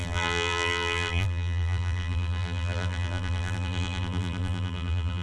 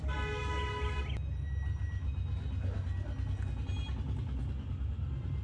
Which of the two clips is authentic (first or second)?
second